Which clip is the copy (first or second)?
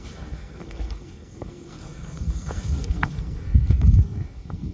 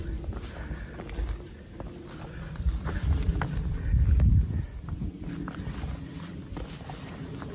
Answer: first